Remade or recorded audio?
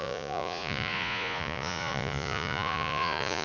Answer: remade